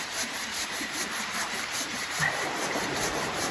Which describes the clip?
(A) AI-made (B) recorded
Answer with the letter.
A